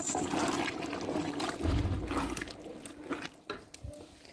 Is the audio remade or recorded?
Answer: recorded